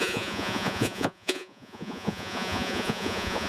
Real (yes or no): no